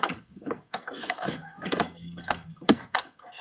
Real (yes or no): no